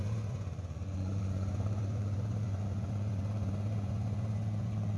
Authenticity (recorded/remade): remade